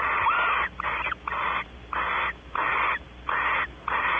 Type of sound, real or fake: real